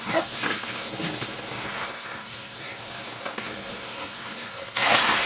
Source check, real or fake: fake